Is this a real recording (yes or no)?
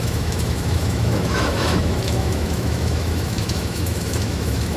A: no